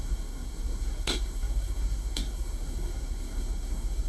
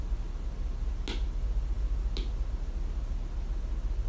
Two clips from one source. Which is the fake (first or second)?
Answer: first